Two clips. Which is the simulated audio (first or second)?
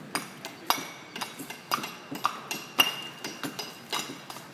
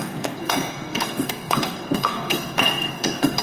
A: second